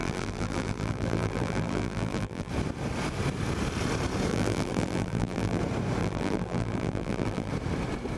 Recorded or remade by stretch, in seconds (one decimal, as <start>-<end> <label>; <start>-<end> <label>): 0.0-2.5 remade; 2.5-4.3 recorded; 4.3-5.6 remade; 5.6-6.0 recorded; 6.0-7.5 remade; 7.5-8.2 recorded